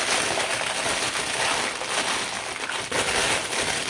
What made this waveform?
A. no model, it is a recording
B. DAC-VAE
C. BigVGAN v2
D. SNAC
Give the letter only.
A